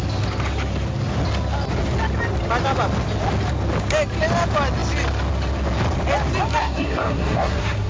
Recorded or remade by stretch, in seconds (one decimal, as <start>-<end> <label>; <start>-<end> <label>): 0.0-6.6 recorded; 6.6-7.9 remade